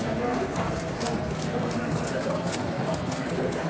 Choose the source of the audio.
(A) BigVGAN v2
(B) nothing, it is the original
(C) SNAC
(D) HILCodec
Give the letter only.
C